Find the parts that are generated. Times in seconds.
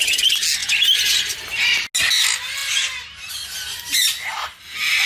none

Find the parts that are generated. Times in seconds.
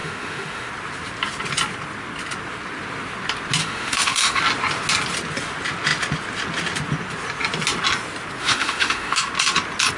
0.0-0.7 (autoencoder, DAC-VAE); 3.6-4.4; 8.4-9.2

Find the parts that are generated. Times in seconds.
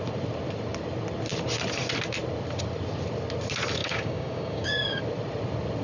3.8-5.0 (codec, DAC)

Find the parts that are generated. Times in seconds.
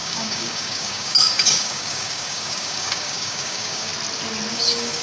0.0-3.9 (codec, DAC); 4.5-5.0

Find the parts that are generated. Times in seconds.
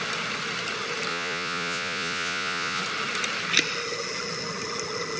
1.1-2.8 (vocoder, Vocos)